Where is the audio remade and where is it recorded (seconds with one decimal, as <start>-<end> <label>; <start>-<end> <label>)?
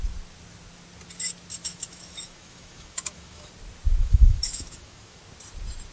0.0-1.6 recorded; 1.6-3.5 remade; 3.5-4.0 recorded; 4.0-5.2 remade; 5.2-5.9 recorded